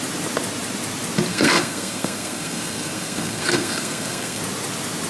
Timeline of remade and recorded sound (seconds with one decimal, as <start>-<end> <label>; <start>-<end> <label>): 0.0-1.3 recorded; 1.3-4.4 remade; 4.4-5.1 recorded